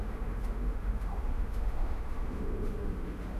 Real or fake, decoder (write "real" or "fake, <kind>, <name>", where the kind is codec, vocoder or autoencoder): fake, autoencoder, DAC-VAE